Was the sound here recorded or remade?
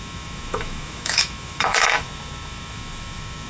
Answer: remade